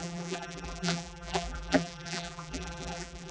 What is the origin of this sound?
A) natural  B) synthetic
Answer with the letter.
B